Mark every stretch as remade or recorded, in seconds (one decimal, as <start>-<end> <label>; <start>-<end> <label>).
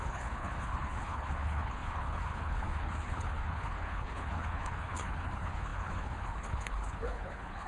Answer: 0.0-7.7 remade